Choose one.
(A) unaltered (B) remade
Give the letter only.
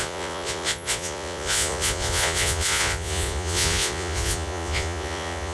B